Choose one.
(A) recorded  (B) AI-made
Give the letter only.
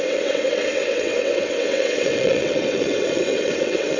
B